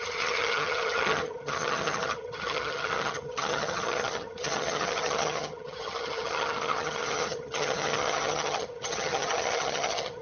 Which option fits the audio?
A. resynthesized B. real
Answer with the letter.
A